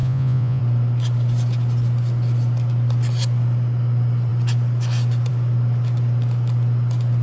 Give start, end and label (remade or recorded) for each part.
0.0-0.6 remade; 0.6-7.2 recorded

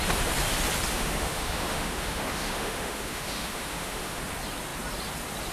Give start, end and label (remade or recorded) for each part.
0.0-0.9 recorded; 0.9-4.2 remade; 4.2-5.5 recorded

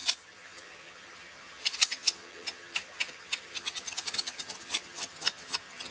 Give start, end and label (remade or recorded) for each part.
0.0-5.9 remade

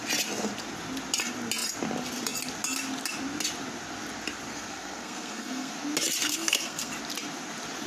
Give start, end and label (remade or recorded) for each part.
0.0-4.5 recorded; 4.5-5.7 remade; 5.7-6.2 recorded; 6.2-6.9 remade; 6.9-7.9 recorded

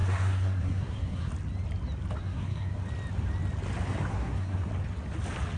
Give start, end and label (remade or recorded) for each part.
0.0-1.3 remade; 1.3-2.2 recorded; 2.2-2.8 remade; 2.8-4.1 recorded; 4.1-4.7 remade; 4.7-5.6 recorded

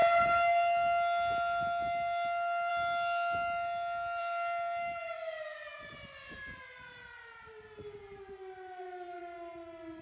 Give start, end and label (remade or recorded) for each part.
0.0-4.2 recorded; 4.2-9.2 remade; 9.2-10.0 recorded